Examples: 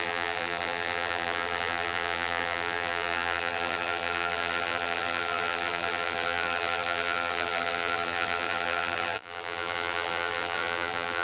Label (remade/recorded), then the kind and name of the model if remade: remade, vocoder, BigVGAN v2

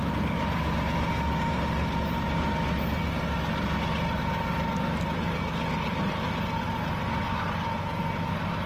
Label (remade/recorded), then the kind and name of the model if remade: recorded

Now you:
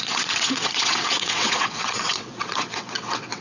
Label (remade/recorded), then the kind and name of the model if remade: remade, vocoder, WaveNeXt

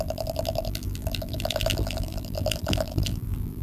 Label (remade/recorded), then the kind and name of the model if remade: remade, vocoder, BigVGAN v2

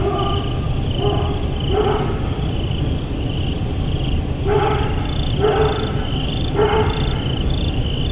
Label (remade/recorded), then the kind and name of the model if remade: recorded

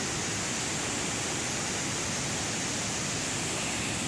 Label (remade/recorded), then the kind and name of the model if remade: recorded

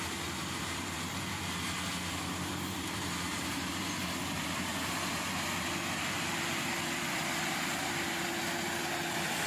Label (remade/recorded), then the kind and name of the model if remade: remade, vocoder, BigVGAN v2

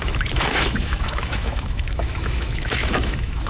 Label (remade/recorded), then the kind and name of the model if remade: remade, autoencoder, DAC-VAE